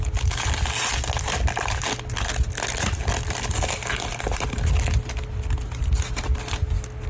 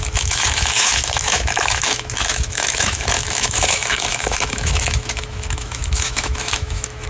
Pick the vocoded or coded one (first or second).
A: second